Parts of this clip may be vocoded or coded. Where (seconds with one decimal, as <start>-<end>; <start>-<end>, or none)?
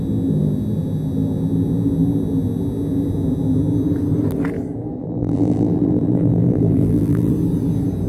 5.0-7.3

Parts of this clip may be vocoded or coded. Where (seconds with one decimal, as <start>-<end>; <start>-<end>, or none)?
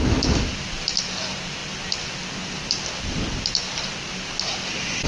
none